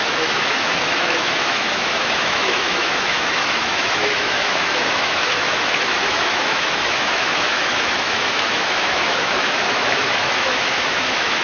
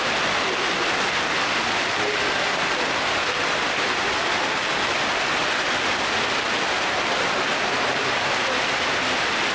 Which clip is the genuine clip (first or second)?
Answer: second